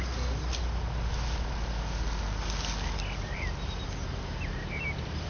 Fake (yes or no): no